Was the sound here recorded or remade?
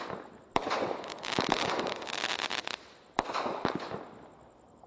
recorded